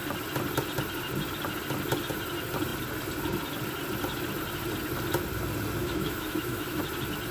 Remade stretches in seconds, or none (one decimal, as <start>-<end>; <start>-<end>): 5.8-6.8